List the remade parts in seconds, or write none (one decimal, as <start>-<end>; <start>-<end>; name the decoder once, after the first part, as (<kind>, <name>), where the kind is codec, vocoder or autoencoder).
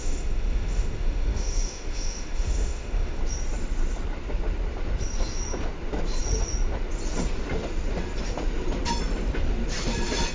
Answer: 0.0-3.2 (autoencoder, DAC-VAE)